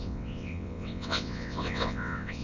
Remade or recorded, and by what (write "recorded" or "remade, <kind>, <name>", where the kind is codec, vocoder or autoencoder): remade, vocoder, WaveNeXt